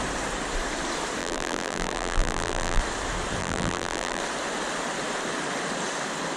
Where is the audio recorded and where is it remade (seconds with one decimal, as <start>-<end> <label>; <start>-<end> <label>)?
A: 0.0-1.2 recorded; 1.2-2.8 remade; 2.8-3.4 recorded; 3.4-4.2 remade; 4.2-6.4 recorded